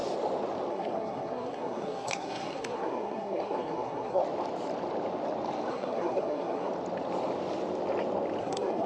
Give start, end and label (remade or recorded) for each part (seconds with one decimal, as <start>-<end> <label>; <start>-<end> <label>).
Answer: 0.0-0.7 recorded; 0.7-4.2 remade; 4.2-5.7 recorded; 5.7-6.7 remade; 6.7-8.4 recorded; 8.4-8.9 remade